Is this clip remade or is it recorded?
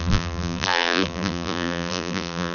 remade